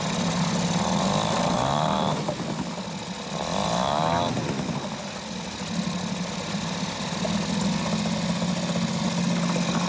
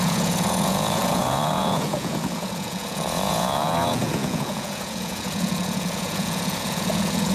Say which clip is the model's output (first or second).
second